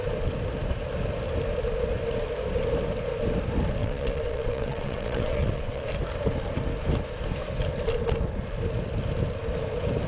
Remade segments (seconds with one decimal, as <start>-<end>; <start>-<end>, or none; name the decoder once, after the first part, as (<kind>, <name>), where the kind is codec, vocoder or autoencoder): 3.8-5.9 (vocoder, WaveNeXt)

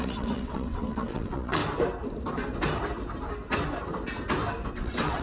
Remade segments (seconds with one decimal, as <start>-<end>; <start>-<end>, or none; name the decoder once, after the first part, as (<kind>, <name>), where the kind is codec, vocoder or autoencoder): 0.0-1.6 (vocoder, WaveNeXt); 4.7-5.2

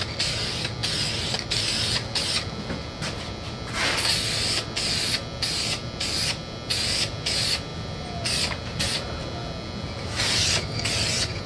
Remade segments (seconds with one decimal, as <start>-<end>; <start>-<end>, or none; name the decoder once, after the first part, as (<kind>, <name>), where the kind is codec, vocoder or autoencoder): none

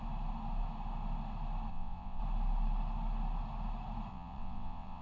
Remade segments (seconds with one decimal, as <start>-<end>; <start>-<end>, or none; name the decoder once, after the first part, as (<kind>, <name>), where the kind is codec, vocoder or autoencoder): 1.7-2.2 (vocoder, WaveNeXt); 4.1-5.0

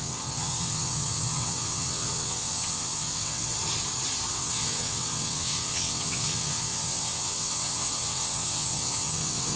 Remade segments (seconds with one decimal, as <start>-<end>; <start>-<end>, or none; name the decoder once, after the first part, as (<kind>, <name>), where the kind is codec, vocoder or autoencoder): 0.0-3.5 (vocoder, WaveNeXt); 4.3-9.6

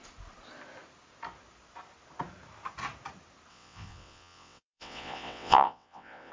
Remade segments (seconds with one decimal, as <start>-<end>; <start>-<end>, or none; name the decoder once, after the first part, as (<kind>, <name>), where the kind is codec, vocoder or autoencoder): 3.5-6.3 (vocoder, WaveNeXt)